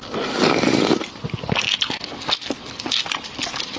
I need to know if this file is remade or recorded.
recorded